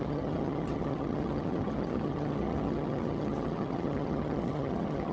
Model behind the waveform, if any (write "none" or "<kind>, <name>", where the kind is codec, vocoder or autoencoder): vocoder, HiFi-GAN